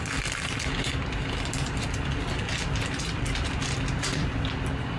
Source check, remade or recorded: recorded